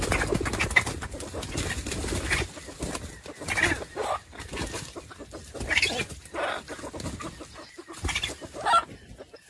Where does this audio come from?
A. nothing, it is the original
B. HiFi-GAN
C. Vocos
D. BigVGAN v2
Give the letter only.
A